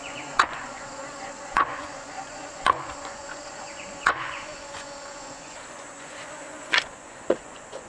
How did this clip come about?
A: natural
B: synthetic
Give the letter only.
B